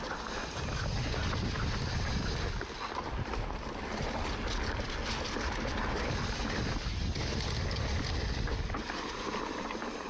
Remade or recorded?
recorded